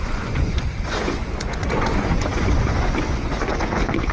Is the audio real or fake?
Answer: fake